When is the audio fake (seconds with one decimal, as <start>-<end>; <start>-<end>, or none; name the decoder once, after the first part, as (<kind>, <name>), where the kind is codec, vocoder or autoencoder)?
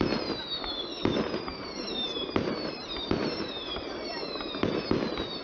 1.0-4.2 (vocoder, BigVGAN v2)